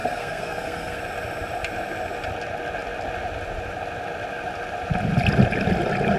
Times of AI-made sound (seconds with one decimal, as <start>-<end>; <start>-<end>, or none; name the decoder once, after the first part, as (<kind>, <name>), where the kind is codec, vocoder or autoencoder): 0.0-1.0 (codec, SNAC)